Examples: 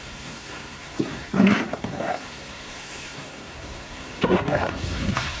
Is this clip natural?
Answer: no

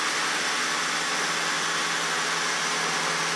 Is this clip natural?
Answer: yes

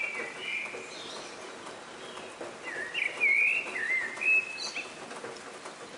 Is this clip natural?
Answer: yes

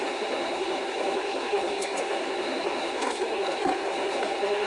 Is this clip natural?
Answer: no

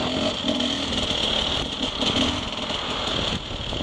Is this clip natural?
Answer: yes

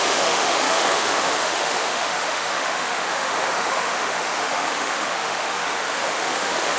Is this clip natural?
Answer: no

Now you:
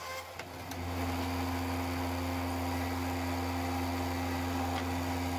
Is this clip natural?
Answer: yes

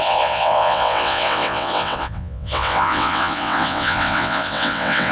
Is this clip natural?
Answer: no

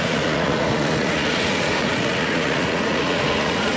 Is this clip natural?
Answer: no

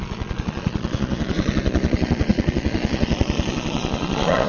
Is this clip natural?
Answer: no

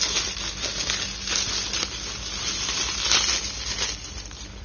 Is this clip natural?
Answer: yes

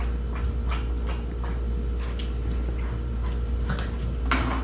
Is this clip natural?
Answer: yes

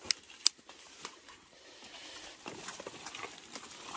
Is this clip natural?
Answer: yes